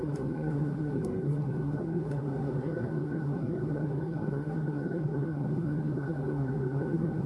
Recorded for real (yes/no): no